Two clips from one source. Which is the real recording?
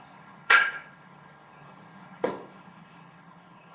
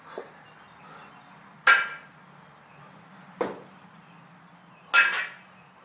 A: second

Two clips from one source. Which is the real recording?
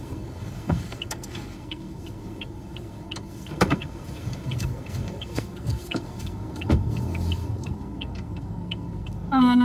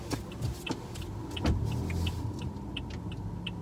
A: second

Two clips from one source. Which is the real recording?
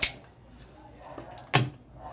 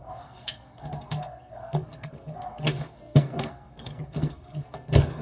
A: first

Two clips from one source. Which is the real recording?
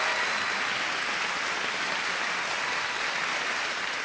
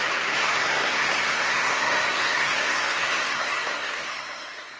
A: first